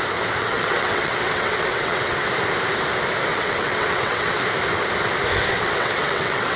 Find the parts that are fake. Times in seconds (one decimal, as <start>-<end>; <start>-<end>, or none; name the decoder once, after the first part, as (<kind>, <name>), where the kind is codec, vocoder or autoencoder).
0.4-2.3 (vocoder, WaveNeXt); 3.3-4.4; 5.5-6.6